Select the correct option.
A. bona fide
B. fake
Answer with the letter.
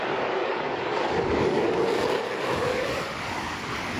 B